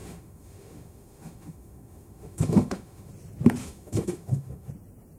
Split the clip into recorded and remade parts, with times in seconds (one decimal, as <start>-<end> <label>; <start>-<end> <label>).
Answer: 0.0-3.1 remade; 3.1-3.6 recorded; 3.6-4.7 remade; 4.7-5.2 recorded